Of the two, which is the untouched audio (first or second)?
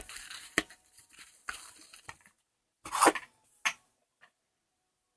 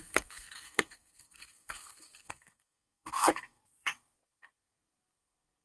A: first